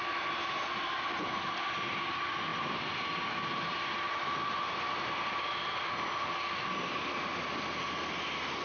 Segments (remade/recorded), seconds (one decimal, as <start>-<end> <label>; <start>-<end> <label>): 0.0-8.6 recorded